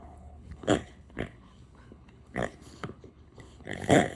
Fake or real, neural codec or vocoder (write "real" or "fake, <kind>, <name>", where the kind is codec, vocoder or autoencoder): fake, codec, HILCodec